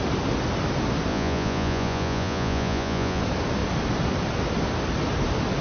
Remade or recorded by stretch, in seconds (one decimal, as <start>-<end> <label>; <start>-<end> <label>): 0.0-1.1 recorded; 1.1-3.2 remade; 3.2-5.6 recorded